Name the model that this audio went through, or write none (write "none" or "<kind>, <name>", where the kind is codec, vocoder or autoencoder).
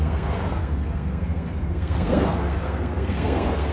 codec, SNAC